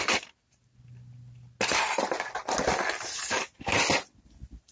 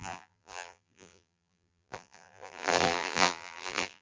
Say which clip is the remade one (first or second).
second